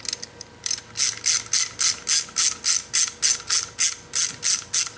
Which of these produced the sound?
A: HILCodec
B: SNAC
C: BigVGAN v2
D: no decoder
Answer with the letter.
D